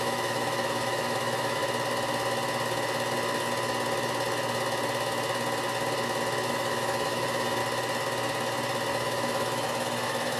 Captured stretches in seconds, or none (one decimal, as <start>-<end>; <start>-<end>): 1.6-6.5; 7.6-8.9